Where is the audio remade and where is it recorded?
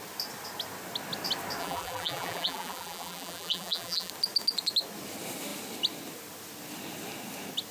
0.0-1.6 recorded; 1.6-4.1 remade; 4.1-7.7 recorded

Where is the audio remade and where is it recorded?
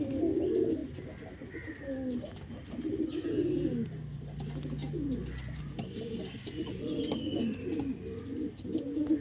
0.0-9.2 recorded